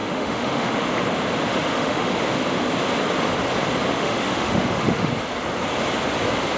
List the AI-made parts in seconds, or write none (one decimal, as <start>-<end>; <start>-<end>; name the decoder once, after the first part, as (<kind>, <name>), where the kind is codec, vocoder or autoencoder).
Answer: 0.0-0.9 (autoencoder, DAC-VAE); 1.5-2.1; 3.9-5.1